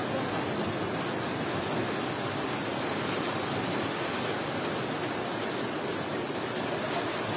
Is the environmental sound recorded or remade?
recorded